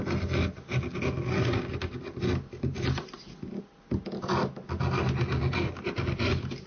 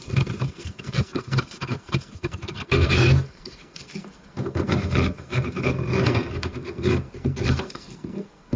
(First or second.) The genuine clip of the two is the first